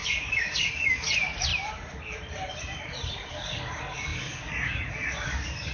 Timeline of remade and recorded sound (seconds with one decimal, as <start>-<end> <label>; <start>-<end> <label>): 0.0-1.5 remade; 1.5-3.3 recorded; 3.3-5.7 remade